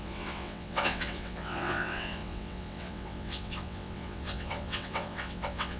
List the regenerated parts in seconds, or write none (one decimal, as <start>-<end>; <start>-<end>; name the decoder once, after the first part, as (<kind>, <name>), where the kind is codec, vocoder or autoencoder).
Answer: 0.0-5.8 (vocoder, WaveNeXt)